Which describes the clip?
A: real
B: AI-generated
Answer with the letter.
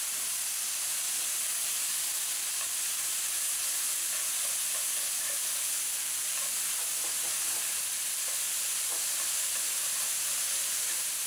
A